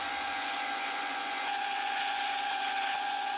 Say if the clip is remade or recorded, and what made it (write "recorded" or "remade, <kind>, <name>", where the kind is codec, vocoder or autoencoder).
remade, vocoder, Vocos